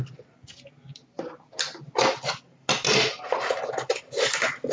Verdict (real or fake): real